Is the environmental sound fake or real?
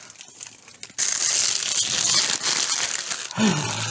real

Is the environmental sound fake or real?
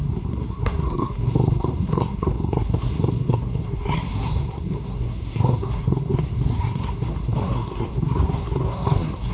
fake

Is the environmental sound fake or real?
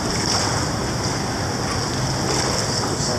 real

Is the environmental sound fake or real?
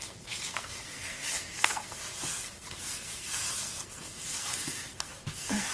fake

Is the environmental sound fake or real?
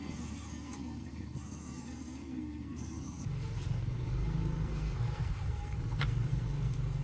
fake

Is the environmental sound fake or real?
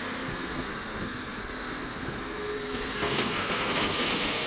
fake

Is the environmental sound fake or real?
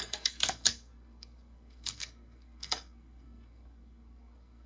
fake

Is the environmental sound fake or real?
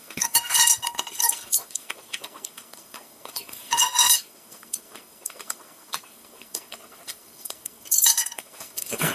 fake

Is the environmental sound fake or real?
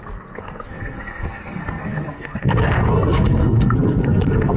fake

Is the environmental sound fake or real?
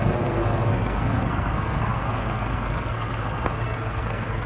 fake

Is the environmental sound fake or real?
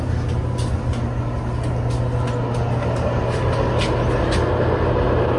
real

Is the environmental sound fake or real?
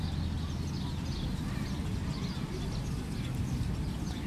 real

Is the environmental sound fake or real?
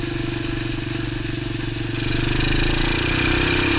real